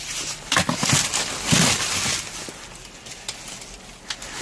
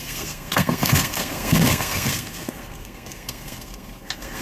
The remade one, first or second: second